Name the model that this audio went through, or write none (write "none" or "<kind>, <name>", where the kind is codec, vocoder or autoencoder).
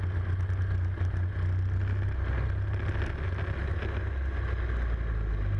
none